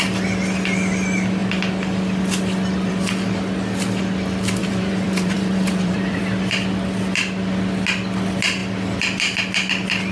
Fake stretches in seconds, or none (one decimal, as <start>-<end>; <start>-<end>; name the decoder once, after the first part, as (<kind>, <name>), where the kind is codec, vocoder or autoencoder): 4.6-6.2 (vocoder, BigVGAN v2)